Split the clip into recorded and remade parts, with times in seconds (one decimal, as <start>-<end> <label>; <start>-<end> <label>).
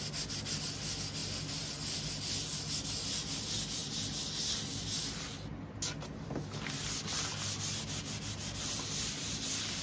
0.0-9.8 recorded